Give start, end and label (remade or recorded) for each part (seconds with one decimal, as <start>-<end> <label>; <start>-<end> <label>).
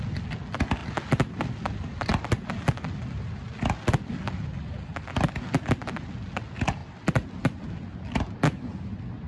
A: 0.0-9.3 recorded